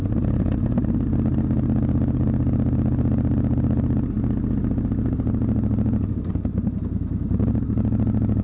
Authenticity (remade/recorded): recorded